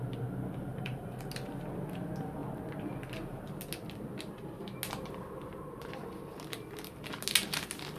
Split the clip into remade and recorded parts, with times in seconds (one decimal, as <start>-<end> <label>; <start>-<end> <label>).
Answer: 0.0-0.7 recorded; 0.7-1.3 remade; 1.3-8.0 recorded